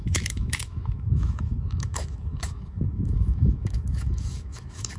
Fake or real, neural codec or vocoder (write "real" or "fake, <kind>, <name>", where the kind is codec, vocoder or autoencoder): fake, autoencoder, DAC-VAE